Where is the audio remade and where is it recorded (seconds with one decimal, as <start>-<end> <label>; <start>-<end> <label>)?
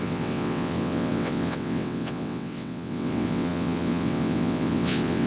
0.0-5.3 remade